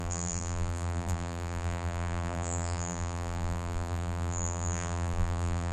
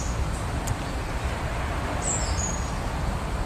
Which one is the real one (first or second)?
second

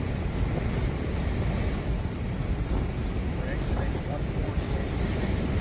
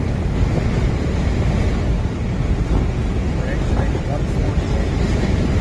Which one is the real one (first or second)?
second